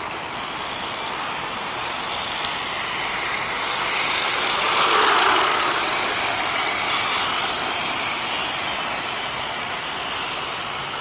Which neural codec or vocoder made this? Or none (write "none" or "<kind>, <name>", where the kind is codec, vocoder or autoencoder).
none